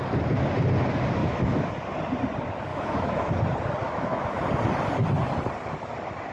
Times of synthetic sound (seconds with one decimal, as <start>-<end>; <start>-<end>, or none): 1.2-1.7; 2.7-3.3; 3.8-4.4